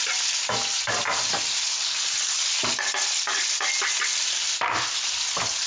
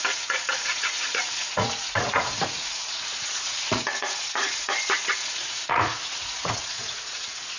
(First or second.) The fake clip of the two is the second